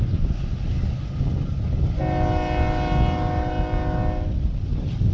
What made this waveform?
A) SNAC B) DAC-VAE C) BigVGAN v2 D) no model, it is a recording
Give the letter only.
D